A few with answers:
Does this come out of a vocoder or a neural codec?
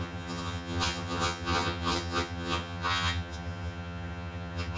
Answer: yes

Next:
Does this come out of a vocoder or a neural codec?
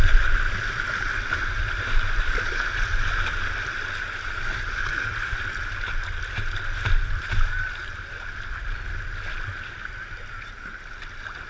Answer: no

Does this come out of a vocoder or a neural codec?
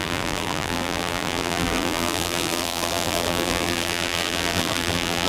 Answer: yes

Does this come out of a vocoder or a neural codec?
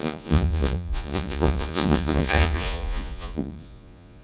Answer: yes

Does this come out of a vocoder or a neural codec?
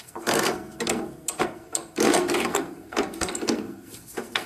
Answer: yes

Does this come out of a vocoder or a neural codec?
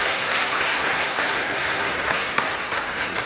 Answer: yes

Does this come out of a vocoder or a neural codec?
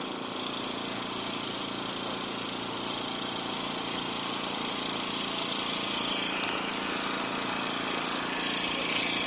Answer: no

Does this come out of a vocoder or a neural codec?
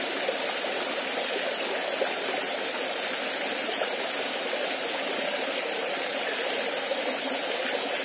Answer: no